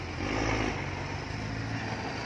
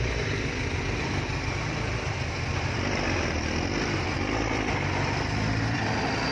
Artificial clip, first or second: second